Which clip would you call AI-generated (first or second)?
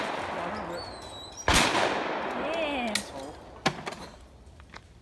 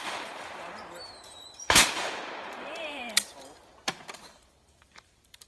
second